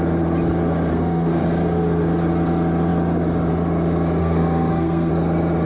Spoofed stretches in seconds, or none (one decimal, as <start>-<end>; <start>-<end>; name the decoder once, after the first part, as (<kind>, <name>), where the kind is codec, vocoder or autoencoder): 0.9-1.4 (codec, SNAC); 4.2-5.1